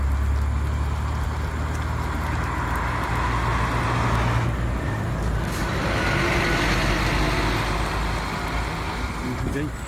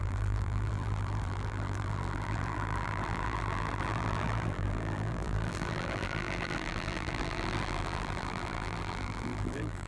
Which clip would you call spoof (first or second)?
second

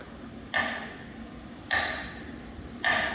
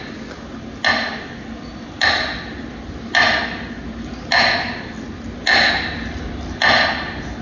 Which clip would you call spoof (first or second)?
first